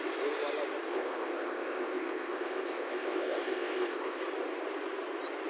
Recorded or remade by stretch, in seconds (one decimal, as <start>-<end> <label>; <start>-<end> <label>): 0.0-0.9 recorded; 0.9-4.2 remade; 4.2-5.5 recorded